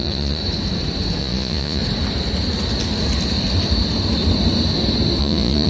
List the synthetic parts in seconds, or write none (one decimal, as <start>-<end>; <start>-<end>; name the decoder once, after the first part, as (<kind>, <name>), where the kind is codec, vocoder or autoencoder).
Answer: 0.0-0.4 (vocoder, Vocos); 1.2-1.8; 5.2-5.7